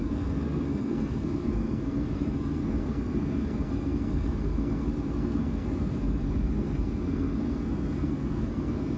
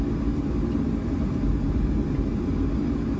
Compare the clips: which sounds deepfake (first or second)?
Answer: first